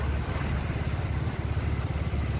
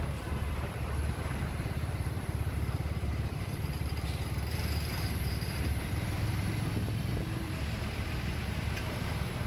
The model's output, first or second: second